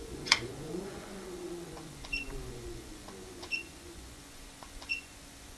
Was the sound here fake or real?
fake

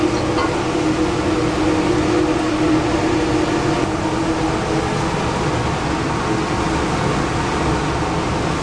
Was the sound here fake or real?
real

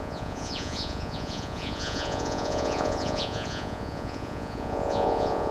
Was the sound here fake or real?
fake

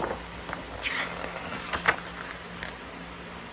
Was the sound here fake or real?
real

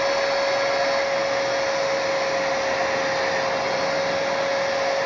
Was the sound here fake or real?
real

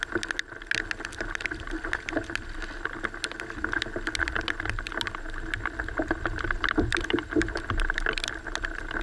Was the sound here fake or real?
real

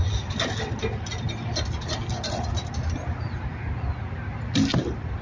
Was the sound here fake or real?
real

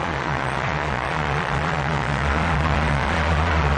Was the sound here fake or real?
fake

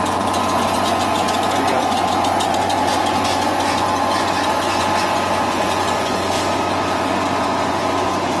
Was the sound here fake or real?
fake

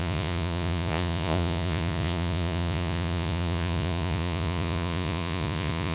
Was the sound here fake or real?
fake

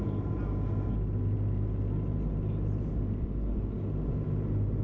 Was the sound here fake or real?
real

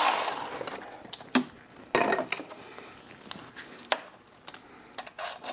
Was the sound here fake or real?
real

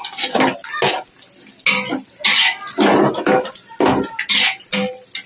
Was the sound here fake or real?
real